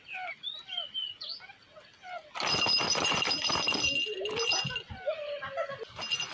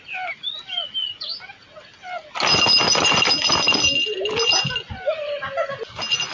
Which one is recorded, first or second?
second